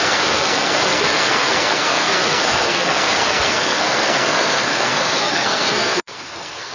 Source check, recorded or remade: remade